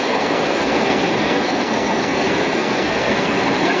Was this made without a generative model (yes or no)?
no